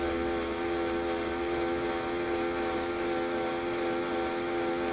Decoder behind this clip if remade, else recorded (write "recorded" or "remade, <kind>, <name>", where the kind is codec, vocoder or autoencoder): recorded